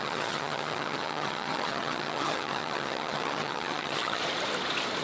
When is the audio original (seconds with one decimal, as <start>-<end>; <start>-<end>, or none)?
4.2-5.0